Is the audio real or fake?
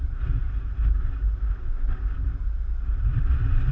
real